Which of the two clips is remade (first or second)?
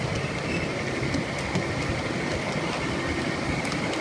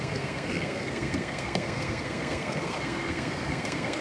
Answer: second